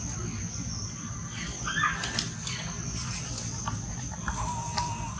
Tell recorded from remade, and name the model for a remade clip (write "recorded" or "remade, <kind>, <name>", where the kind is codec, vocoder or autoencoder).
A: recorded